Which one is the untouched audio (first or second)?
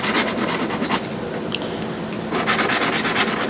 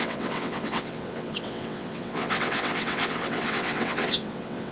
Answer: first